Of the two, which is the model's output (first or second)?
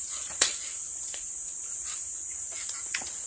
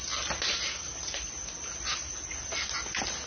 first